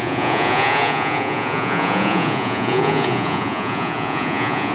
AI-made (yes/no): yes